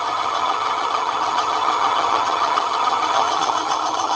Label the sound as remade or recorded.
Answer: remade